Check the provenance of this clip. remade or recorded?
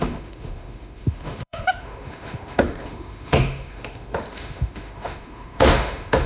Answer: remade